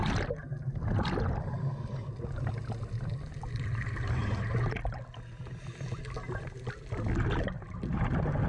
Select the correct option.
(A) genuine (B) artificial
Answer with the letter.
A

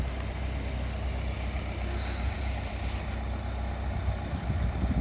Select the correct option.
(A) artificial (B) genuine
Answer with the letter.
B